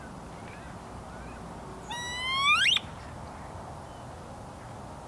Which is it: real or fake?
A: real